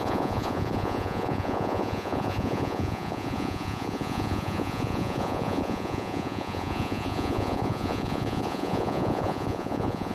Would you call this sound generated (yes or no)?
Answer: yes